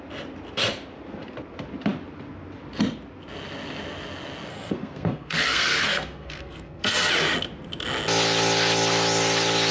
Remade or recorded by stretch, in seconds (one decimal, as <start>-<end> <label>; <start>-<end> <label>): 0.0-4.5 recorded; 4.5-7.1 remade; 7.1-9.7 recorded